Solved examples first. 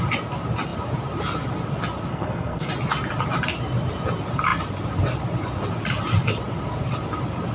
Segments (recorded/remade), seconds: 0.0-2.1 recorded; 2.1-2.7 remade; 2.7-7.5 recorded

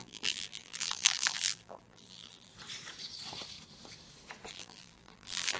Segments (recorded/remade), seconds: 0.0-2.5 remade; 2.5-4.5 recorded; 4.5-5.6 remade

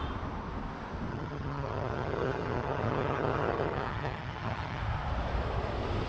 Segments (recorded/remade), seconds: 0.0-1.1 recorded; 1.1-4.8 remade; 4.8-6.1 recorded